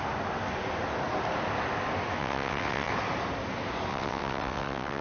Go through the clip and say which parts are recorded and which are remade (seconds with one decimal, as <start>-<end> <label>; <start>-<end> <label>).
0.0-2.2 recorded; 2.2-2.9 remade; 2.9-3.9 recorded; 3.9-5.0 remade